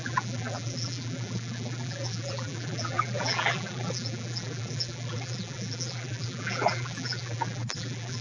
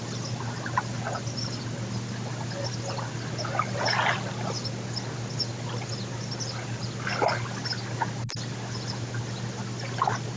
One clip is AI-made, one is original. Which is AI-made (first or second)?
first